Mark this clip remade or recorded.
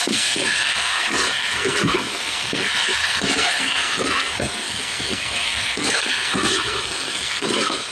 remade